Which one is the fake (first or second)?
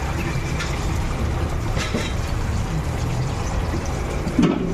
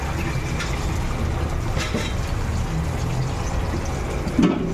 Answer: first